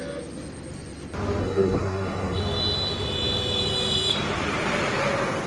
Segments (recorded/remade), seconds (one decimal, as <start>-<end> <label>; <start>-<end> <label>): 0.0-1.4 recorded; 1.4-2.4 remade; 2.4-5.5 recorded